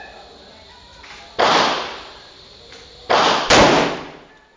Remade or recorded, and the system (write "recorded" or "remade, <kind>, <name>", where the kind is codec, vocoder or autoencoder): recorded